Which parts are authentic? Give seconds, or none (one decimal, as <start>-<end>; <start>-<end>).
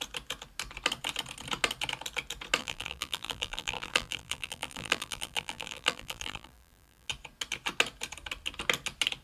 0.0-2.6; 7.1-9.2